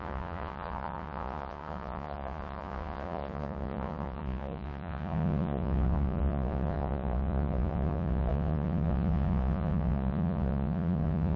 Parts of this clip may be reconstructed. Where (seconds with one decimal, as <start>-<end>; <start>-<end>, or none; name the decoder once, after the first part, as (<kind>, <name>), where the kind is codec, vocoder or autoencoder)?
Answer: 0.0-11.4 (vocoder, Vocos)